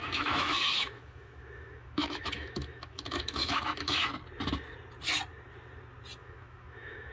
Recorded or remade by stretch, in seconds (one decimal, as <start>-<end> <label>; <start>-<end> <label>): 0.0-4.1 remade; 4.1-6.2 recorded; 6.2-7.1 remade